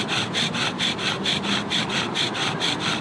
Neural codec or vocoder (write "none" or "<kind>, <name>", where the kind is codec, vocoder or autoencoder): none